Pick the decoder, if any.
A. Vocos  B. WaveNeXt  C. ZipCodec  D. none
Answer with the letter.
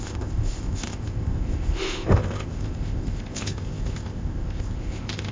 C